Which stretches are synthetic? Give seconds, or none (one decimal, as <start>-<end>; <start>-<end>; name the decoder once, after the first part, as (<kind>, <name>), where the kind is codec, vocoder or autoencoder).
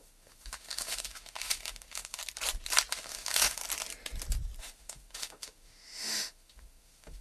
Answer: 0.0-2.2 (autoencoder, DAC-VAE); 2.9-3.6; 4.6-7.2